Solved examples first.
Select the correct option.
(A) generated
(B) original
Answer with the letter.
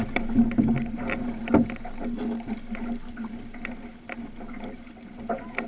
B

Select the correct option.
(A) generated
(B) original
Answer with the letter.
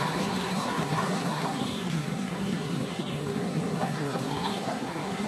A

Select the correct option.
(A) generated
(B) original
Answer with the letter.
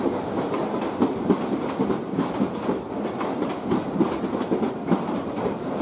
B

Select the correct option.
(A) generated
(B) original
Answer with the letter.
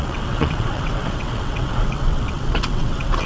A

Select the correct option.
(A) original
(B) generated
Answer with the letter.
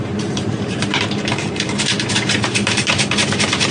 B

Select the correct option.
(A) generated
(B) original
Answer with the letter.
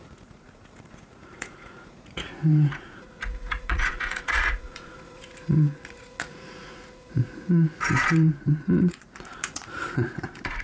A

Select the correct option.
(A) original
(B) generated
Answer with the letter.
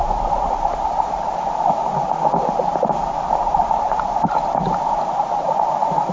A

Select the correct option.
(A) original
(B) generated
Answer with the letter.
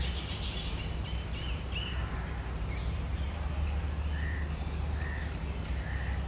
A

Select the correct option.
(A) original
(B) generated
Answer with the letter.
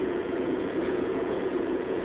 B